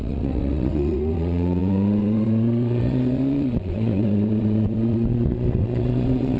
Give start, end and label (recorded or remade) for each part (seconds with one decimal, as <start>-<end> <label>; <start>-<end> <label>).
0.0-6.4 remade